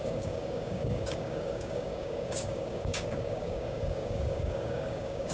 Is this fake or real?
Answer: fake